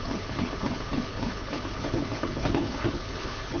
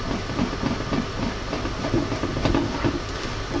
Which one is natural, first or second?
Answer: second